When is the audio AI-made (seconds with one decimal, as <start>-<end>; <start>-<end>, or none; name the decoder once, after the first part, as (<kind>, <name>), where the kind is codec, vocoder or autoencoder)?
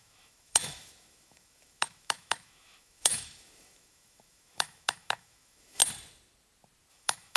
0.0-5.8 (autoencoder, DAC-VAE); 6.9-7.4